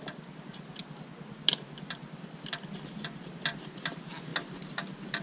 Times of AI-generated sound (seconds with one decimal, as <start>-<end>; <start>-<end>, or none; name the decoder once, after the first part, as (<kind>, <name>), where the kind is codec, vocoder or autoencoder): none